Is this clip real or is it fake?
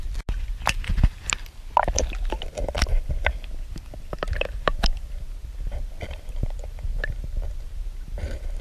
real